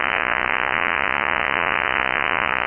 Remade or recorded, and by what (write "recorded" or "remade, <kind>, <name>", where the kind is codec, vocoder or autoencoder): remade, vocoder, Vocos